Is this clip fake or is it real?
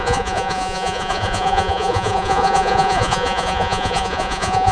fake